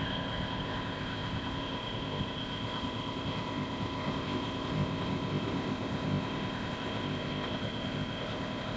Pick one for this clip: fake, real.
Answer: fake